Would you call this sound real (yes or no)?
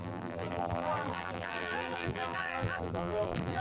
no